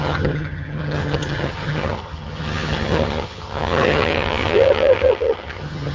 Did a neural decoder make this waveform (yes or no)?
yes